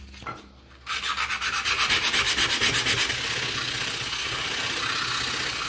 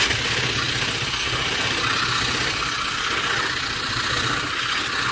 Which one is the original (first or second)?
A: first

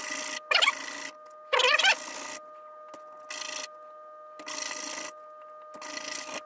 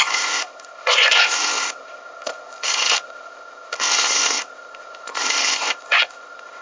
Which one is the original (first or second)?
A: first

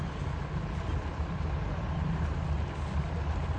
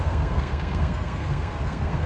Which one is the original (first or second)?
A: first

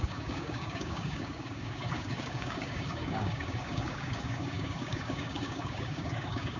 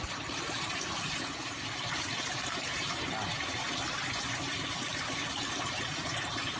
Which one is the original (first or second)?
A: second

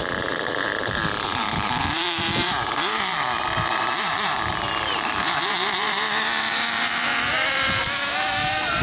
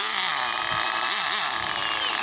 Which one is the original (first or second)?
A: second